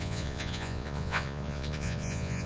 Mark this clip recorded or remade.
remade